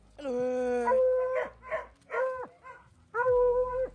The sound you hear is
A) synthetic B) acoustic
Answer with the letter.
B